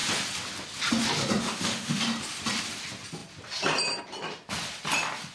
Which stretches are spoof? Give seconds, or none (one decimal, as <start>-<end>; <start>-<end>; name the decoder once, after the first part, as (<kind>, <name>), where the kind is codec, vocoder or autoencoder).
1.4-2.0 (autoencoder, DAC-VAE)